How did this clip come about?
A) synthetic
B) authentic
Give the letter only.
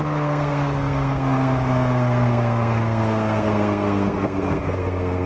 A